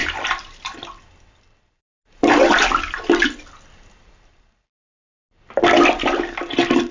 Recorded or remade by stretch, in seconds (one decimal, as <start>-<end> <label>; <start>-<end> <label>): 0.0-6.9 recorded